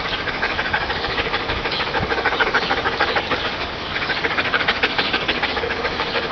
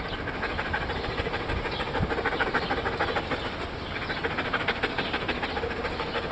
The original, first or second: second